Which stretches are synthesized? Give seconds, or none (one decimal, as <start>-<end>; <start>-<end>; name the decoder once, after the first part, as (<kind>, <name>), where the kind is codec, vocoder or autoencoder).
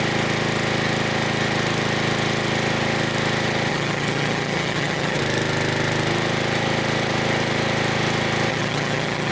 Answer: 3.7-5.2 (vocoder, HiFi-GAN); 8.5-9.3